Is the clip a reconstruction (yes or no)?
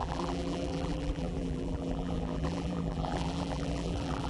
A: yes